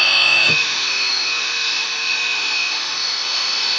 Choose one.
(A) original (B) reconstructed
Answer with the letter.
B